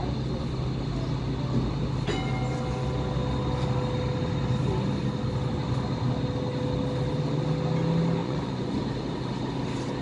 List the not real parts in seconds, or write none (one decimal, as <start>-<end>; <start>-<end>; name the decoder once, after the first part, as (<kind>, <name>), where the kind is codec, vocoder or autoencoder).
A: 8.2-8.8 (vocoder, Vocos)